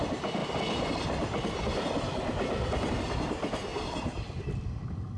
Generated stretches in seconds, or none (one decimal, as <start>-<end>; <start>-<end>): 3.7-4.4